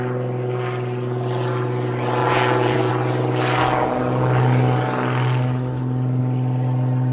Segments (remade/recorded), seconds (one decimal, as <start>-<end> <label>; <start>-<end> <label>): 0.0-2.2 recorded; 2.2-2.9 remade; 2.9-7.1 recorded